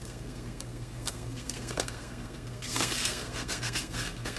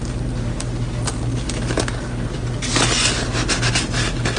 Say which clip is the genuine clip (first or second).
second